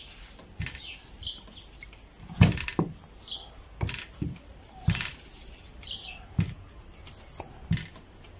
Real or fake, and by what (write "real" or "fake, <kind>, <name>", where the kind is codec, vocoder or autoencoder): real